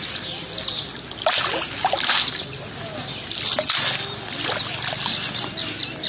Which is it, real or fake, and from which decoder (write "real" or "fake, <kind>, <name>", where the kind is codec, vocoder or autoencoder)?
real